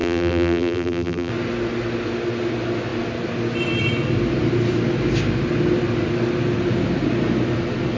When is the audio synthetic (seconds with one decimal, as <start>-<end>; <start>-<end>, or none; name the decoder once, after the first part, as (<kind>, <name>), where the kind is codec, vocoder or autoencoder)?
0.0-1.3 (vocoder, BigVGAN v2)